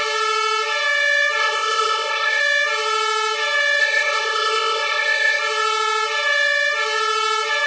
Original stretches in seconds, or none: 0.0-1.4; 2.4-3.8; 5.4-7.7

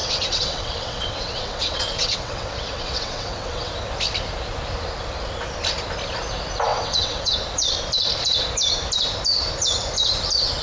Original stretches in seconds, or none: 3.7-6.7; 7.3-10.6